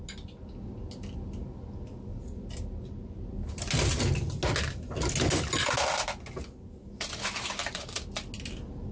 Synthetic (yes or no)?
no